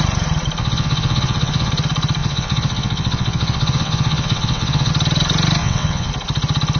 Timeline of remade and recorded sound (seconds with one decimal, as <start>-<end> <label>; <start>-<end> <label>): 0.0-0.6 recorded; 0.6-1.7 remade; 1.7-2.2 recorded; 2.2-4.9 remade; 4.9-5.6 recorded; 5.6-6.1 remade; 6.1-6.8 recorded